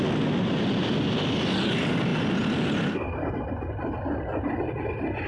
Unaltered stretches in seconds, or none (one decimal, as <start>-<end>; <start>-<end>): 0.0-5.3